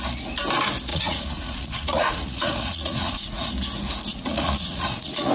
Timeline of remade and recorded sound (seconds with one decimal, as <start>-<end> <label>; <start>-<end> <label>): 0.0-0.9 recorded; 0.9-3.5 remade; 3.5-4.1 recorded; 4.1-5.3 remade